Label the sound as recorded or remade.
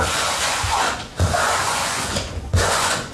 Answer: remade